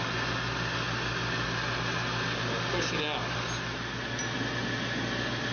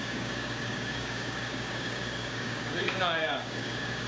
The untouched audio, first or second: first